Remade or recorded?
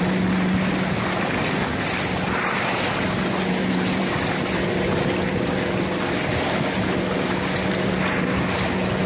recorded